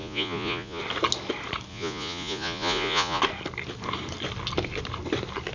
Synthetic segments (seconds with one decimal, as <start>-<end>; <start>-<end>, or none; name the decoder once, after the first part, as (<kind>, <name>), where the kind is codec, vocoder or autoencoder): 0.0-0.8 (vocoder, Vocos); 1.7-3.2

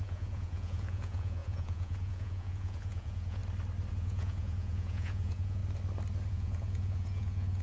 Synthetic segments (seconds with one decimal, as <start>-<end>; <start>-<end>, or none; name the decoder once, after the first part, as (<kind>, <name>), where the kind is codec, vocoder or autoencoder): 0.0-3.4 (vocoder, Vocos); 3.9-5.6; 6.3-7.6

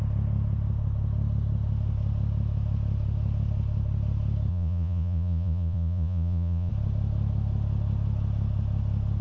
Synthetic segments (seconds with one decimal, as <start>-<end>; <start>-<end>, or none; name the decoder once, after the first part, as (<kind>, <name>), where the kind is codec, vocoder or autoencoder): 4.5-6.7 (vocoder, Vocos)

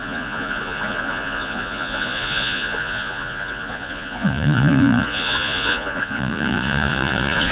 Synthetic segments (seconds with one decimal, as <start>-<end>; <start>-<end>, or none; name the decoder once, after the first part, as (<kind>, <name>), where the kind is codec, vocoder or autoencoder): 0.0-7.5 (vocoder, Vocos)